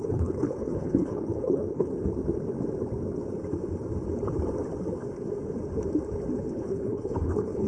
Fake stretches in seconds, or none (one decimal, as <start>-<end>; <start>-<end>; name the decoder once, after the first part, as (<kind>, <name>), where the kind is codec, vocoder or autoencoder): 0.0-1.9 (codec, HILCodec); 6.5-7.7